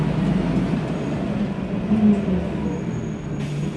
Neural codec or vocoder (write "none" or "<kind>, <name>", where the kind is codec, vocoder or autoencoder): none